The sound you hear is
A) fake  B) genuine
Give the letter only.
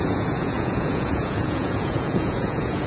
A